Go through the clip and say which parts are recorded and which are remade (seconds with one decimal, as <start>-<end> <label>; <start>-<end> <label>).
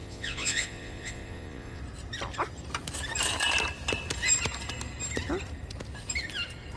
0.0-1.8 remade; 1.8-6.8 recorded